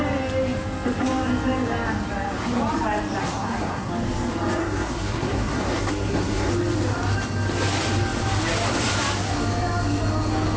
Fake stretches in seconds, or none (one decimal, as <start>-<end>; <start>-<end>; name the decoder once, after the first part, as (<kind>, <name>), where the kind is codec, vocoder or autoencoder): 3.2-3.9 (codec, SNAC); 4.6-6.5